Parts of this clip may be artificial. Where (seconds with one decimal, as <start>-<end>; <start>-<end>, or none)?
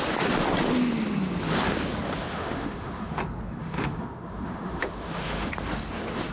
2.3-3.2; 3.6-5.5